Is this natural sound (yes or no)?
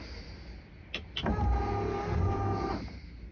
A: yes